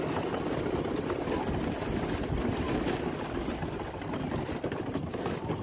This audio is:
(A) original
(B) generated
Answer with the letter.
A